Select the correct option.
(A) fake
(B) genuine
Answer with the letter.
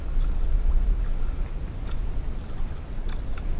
B